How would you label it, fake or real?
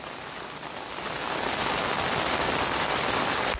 real